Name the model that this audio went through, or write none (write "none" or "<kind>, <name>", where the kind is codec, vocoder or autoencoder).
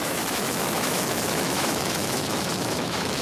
autoencoder, DAC-VAE